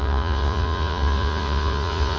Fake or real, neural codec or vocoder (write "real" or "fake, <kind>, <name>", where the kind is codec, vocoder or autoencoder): fake, vocoder, Vocos